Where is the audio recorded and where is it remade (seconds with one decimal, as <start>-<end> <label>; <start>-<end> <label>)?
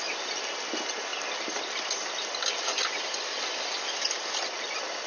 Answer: 0.0-5.1 recorded